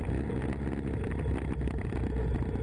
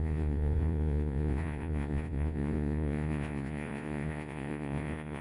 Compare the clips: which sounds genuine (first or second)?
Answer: first